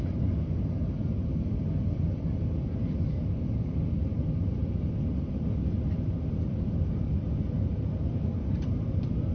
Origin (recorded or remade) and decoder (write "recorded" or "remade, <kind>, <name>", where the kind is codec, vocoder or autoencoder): recorded